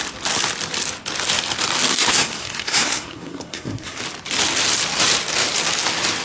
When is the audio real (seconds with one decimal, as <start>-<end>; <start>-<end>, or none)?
0.0-1.9; 4.0-6.2